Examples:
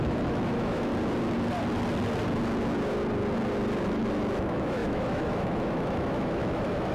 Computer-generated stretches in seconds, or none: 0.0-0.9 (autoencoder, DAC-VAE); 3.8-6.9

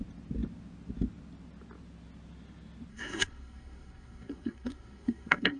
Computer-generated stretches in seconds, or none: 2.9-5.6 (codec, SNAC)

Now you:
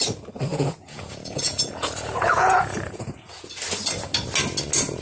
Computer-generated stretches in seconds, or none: 0.5-3.5 (vocoder, Vocos)

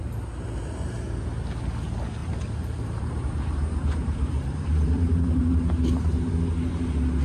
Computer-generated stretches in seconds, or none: 2.2-6.3 (vocoder, BigVGAN v2)

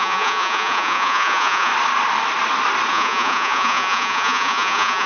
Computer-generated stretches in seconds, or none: 0.0-1.7 (vocoder, Vocos); 2.9-5.1

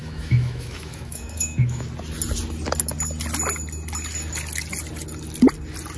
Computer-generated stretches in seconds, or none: 0.0-1.8 (autoencoder, DAC-VAE)

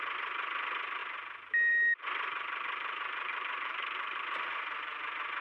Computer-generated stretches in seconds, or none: 2.3-4.2 (vocoder, BigVGAN v2)

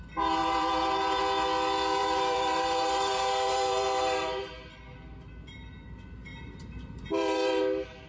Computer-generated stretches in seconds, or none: 0.4-1.2 (vocoder, BigVGAN v2); 2.0-4.5; 6.3-7.6